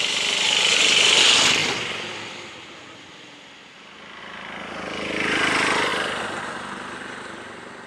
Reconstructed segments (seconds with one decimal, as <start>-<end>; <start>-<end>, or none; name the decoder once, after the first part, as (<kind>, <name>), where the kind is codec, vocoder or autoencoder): none